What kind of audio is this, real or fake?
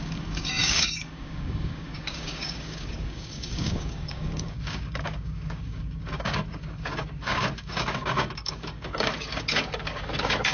fake